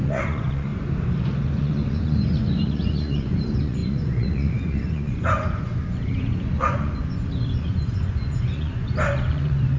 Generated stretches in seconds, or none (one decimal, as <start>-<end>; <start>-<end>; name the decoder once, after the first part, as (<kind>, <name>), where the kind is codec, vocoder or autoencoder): 0.0-0.7 (vocoder, Vocos); 1.6-9.8

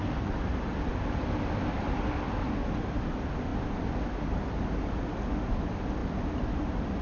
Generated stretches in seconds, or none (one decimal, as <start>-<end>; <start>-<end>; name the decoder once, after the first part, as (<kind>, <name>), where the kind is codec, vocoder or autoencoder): none